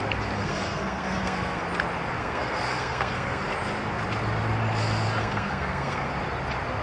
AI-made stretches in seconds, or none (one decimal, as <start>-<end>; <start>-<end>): 0.4-1.6; 2.2-3.4; 5.2-6.1